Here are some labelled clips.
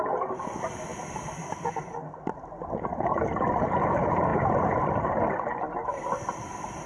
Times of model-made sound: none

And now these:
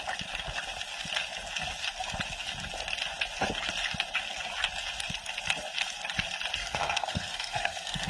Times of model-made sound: 6.6-8.1 (codec, SNAC)